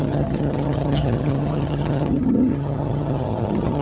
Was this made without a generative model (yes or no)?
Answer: no